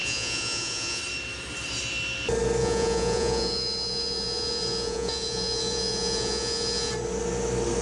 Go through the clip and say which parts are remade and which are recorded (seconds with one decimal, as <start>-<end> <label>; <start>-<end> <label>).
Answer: 0.0-1.0 remade; 1.0-2.6 recorded; 2.6-6.9 remade; 6.9-7.8 recorded